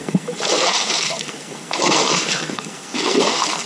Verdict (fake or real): fake